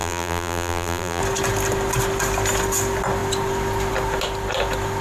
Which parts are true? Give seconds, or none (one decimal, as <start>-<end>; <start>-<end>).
1.2-5.0